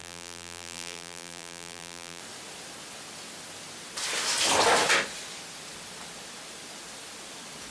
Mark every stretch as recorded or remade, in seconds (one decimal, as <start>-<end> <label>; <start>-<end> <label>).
0.0-2.2 remade; 2.2-7.7 recorded